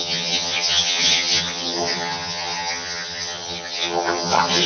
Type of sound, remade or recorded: remade